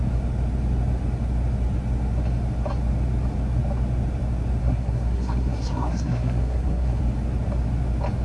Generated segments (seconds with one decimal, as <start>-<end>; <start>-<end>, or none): 4.6-7.0